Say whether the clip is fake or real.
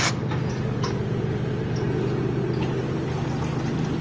real